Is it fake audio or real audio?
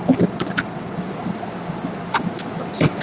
real